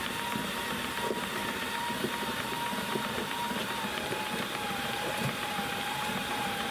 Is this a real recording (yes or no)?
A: no